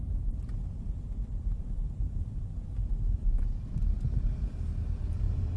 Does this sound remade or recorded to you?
remade